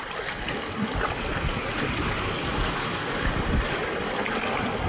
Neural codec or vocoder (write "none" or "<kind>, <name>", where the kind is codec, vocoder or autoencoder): none